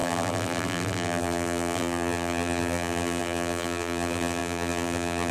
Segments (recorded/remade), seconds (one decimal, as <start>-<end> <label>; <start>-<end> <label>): 0.0-5.3 remade